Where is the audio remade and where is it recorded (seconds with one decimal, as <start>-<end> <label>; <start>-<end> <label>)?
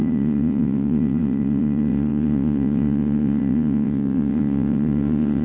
0.0-5.4 remade